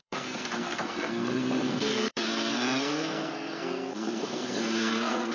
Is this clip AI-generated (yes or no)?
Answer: yes